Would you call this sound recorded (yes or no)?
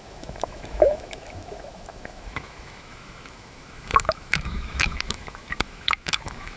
no